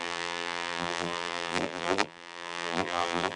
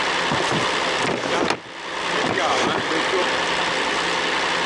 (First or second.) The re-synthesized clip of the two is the first